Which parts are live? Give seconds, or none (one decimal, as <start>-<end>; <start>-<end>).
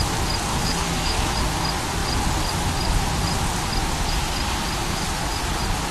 0.0-0.5; 1.4-5.9